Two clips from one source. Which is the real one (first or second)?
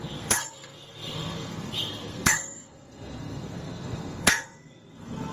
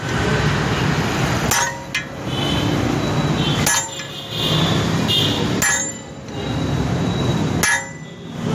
second